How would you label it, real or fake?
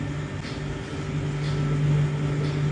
real